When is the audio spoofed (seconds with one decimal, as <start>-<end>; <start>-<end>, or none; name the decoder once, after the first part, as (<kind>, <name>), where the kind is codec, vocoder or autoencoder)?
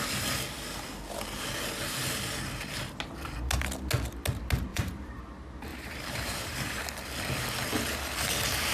4.7-5.2 (vocoder, BigVGAN v2); 5.7-6.8